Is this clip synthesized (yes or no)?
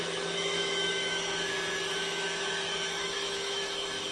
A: yes